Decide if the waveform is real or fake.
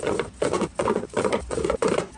fake